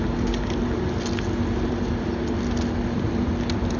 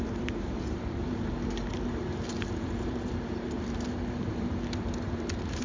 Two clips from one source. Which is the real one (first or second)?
first